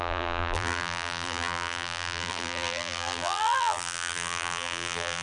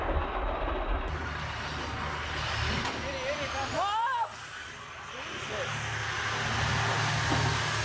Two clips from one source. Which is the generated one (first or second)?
first